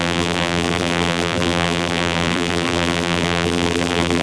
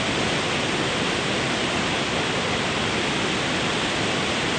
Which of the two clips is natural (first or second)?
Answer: second